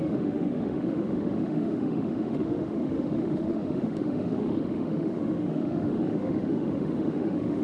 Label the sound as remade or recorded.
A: remade